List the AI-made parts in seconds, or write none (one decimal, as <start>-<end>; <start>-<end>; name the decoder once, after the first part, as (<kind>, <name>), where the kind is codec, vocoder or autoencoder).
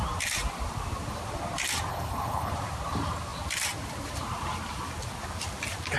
1.9-2.5 (codec, HILCodec)